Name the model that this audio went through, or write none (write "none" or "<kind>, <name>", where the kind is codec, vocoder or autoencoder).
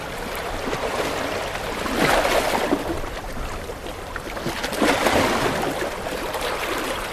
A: none